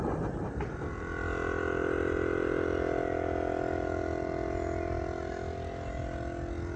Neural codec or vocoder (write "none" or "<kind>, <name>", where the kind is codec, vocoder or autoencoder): none